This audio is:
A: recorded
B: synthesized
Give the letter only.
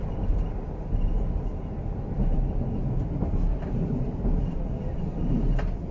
A